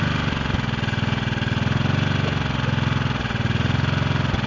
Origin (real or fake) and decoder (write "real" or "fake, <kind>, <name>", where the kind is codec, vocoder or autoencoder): real